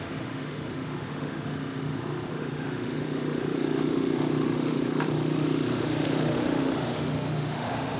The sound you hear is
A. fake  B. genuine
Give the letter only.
A